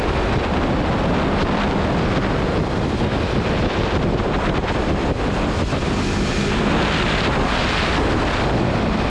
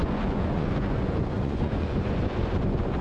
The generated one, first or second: second